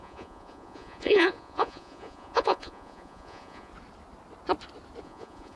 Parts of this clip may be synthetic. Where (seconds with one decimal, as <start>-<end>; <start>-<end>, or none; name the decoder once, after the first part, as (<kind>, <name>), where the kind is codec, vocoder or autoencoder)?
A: 0.0-3.7 (vocoder, Vocos); 5.0-5.6